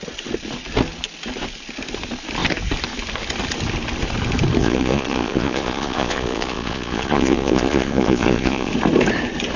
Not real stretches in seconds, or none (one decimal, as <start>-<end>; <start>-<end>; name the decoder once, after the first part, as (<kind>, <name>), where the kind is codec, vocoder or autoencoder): 4.6-8.7 (vocoder, Vocos)